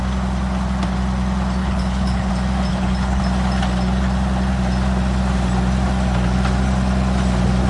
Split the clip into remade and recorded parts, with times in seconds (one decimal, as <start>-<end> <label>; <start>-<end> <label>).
0.0-1.6 recorded; 1.6-2.3 remade; 2.3-2.7 recorded; 2.7-3.2 remade; 3.2-7.7 recorded